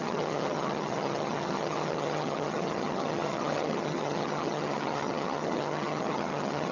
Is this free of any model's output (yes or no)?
no